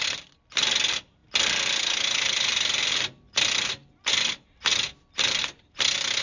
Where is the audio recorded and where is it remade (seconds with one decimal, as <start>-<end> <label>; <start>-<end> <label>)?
0.0-6.2 recorded